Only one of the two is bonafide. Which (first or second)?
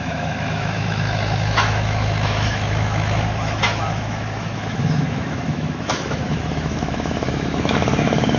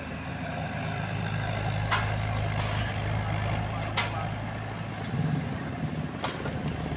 second